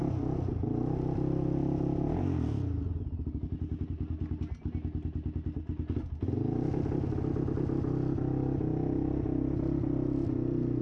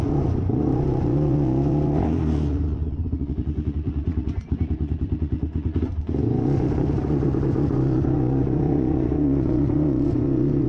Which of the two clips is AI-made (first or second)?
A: second